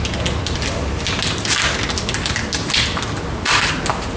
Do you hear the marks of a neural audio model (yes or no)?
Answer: no